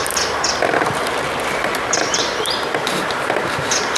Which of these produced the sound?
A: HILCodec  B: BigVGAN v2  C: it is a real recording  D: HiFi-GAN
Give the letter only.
B